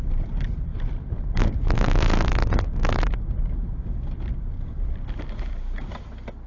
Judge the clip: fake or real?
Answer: real